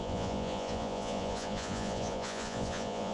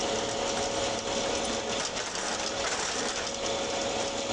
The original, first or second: second